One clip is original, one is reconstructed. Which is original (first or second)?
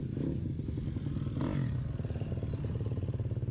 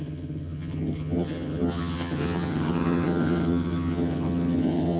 first